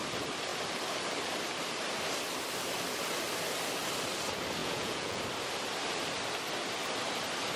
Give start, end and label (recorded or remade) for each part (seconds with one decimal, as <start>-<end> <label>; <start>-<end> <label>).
0.0-4.6 recorded; 4.6-5.2 remade; 5.2-7.6 recorded